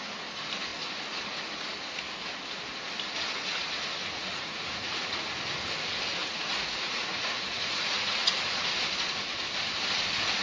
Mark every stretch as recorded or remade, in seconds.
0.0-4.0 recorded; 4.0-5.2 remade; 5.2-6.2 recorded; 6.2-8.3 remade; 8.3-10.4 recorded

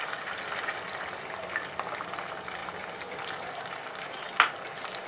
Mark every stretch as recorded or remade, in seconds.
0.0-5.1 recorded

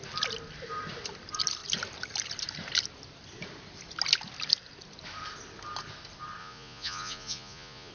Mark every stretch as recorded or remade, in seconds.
0.0-6.4 recorded; 6.4-7.9 remade

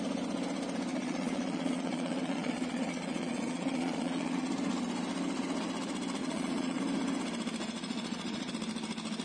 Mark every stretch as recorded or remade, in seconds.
0.0-0.9 recorded; 0.9-4.5 remade; 4.5-6.2 recorded; 6.2-6.8 remade; 6.8-7.6 recorded; 7.6-8.5 remade; 8.5-9.2 recorded

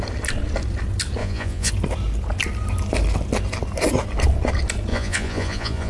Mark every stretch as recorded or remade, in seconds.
0.0-1.2 recorded; 1.2-1.7 remade; 1.7-4.9 recorded; 4.9-5.9 remade